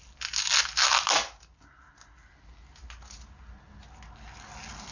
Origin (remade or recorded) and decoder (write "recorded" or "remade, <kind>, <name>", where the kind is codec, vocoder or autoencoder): recorded